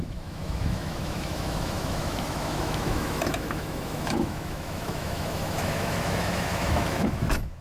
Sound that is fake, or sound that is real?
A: fake